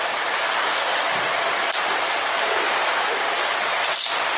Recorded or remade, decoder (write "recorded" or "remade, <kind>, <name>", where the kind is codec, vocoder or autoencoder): recorded